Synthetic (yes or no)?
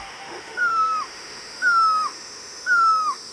yes